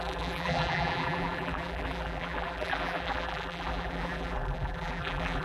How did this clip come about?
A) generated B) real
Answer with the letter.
A